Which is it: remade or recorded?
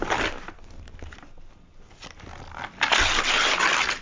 recorded